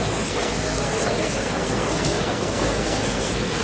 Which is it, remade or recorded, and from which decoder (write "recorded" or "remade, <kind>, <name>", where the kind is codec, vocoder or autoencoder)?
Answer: remade, codec, SNAC